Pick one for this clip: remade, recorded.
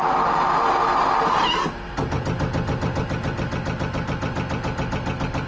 recorded